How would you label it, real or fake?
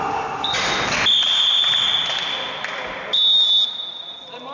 real